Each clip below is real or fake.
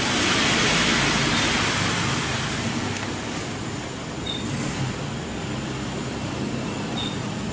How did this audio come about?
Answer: real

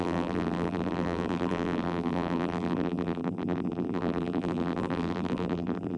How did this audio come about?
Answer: fake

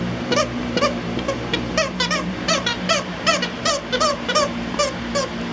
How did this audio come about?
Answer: fake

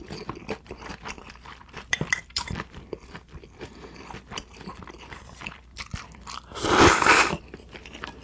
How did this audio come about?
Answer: fake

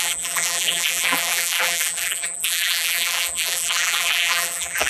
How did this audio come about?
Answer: fake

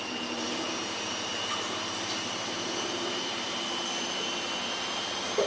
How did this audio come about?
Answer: fake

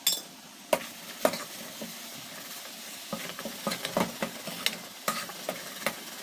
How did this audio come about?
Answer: real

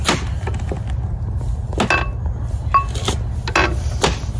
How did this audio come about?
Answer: real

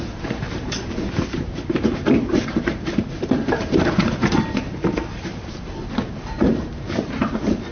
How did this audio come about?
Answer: fake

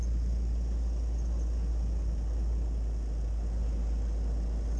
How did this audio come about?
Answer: real